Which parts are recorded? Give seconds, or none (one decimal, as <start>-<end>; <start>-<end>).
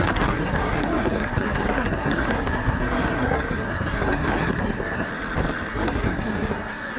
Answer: 5.1-5.7